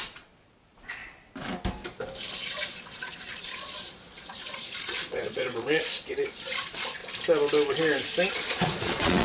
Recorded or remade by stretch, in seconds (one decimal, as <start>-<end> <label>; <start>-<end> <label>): 0.0-1.0 remade; 1.0-2.3 recorded; 2.3-7.0 remade; 7.0-8.3 recorded; 8.3-9.2 remade